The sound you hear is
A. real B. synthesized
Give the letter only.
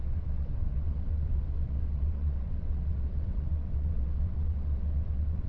B